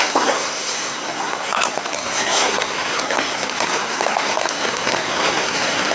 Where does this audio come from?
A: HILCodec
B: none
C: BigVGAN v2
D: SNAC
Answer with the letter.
D